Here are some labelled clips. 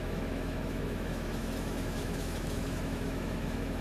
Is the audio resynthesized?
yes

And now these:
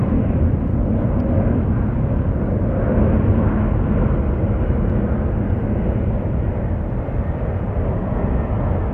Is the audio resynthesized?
no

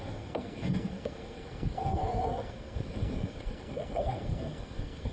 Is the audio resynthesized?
yes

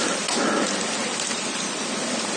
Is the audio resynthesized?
no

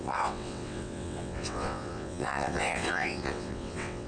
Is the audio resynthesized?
yes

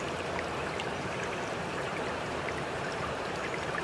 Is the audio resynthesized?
yes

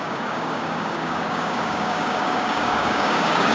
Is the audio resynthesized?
yes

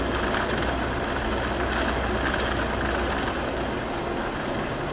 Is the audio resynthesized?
no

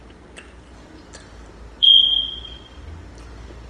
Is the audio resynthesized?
no